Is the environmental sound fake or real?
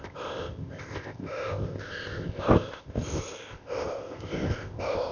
fake